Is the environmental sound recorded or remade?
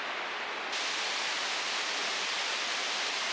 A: remade